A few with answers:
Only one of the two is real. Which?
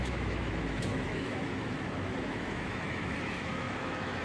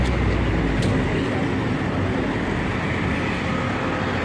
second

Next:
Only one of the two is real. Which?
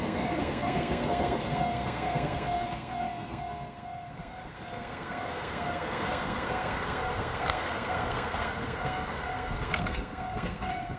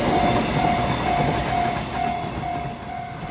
second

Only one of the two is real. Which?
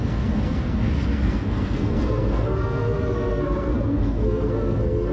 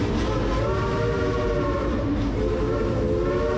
second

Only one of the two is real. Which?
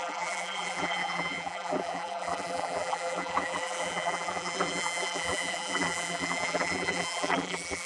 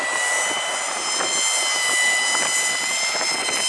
second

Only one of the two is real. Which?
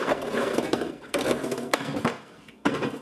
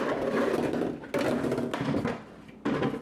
second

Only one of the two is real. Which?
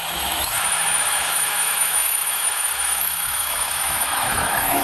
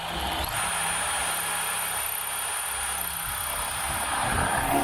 second